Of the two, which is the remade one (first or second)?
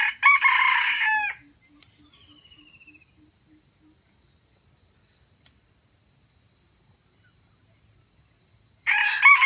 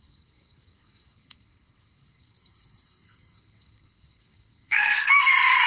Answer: second